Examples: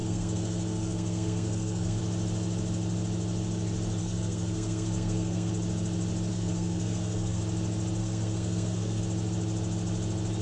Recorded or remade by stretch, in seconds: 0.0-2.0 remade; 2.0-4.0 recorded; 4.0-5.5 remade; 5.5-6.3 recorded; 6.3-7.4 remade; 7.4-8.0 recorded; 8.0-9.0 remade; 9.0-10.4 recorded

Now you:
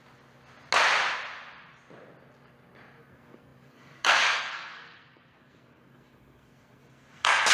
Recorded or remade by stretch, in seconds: 0.0-3.0 recorded; 3.0-7.5 remade

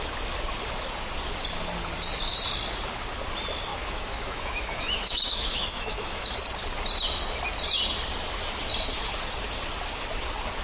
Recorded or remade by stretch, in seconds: 0.0-3.7 recorded; 3.7-6.4 remade; 6.4-10.6 recorded

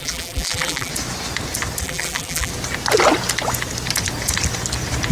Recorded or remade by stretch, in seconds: 0.0-0.9 remade; 0.9-1.8 recorded; 1.8-2.5 remade; 2.5-5.1 recorded

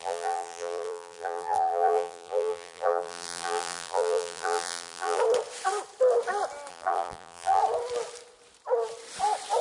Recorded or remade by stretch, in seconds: 0.0-5.2 remade; 5.2-6.7 recorded; 6.7-7.6 remade; 7.6-9.6 recorded

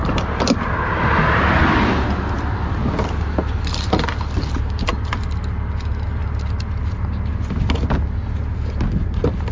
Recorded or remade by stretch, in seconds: 0.0-9.5 recorded

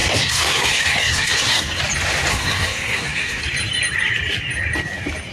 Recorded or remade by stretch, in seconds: 0.0-1.8 remade; 1.8-2.3 recorded; 2.3-3.4 remade; 3.4-5.3 recorded